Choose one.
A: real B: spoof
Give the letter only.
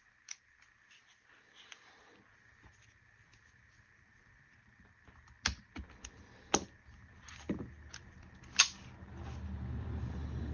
A